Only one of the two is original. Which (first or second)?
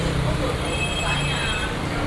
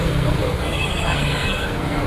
first